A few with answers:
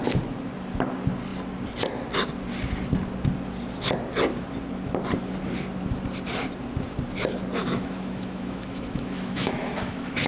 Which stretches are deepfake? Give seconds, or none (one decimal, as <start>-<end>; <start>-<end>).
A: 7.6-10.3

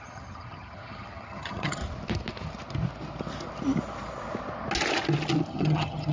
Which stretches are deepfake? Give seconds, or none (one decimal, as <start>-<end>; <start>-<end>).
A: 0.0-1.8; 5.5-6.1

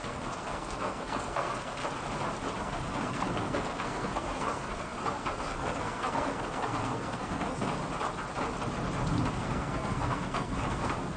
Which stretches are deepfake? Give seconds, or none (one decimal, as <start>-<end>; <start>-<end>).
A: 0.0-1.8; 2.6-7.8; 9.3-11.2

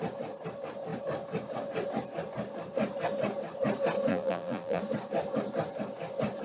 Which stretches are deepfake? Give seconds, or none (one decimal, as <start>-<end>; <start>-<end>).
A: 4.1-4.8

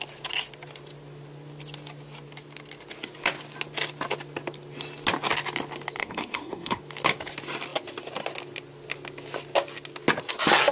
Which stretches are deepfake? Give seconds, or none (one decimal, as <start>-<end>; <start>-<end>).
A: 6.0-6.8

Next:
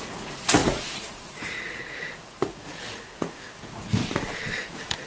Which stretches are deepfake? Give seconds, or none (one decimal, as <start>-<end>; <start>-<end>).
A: 0.0-4.0; 4.6-5.1

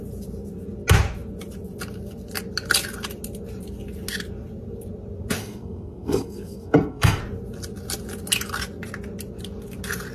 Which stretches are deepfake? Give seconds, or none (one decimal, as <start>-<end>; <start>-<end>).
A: 5.4-7.2